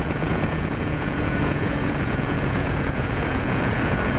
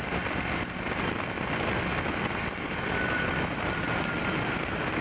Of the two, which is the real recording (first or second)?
second